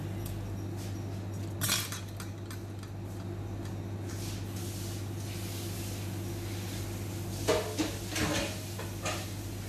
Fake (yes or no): no